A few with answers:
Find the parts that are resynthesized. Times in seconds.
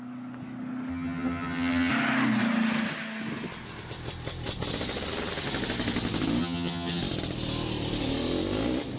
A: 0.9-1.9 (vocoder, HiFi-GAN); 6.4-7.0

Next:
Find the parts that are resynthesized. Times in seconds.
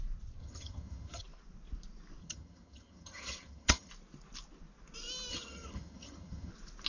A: 0.4-1.2 (vocoder, HiFi-GAN); 2.2-3.9; 5.3-6.5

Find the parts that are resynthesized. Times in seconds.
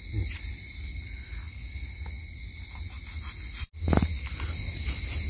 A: none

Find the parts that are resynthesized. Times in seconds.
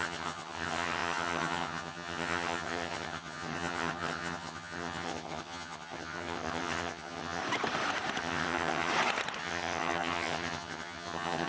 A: 0.0-7.4 (vocoder, HiFi-GAN); 8.2-8.9; 9.4-11.5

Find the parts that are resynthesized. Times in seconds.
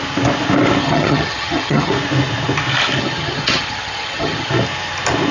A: 0.8-1.9 (vocoder, HiFi-GAN); 3.0-4.5